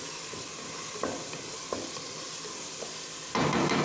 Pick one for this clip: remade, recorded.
recorded